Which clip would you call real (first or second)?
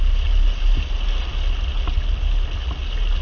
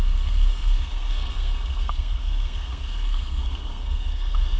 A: first